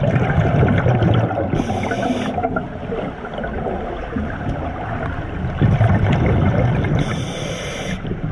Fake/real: real